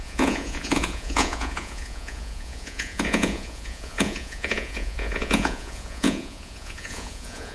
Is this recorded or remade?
remade